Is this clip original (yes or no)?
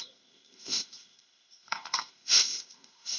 no